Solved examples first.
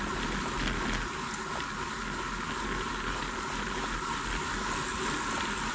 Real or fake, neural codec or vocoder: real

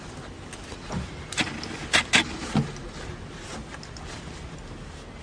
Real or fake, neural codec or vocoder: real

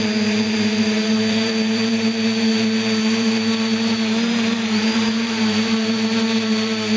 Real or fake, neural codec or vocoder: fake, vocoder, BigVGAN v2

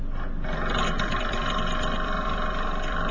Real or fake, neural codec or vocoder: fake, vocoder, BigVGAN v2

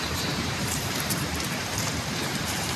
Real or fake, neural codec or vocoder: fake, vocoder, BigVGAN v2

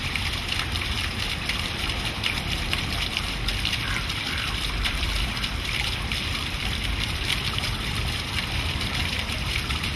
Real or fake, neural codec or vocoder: fake, vocoder, BigVGAN v2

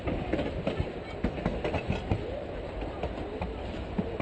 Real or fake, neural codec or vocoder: fake, vocoder, BigVGAN v2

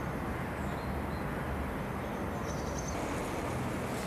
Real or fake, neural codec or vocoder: real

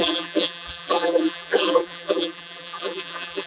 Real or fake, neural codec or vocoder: fake, vocoder, BigVGAN v2